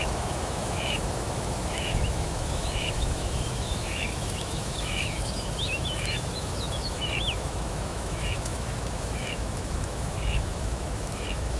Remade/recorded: remade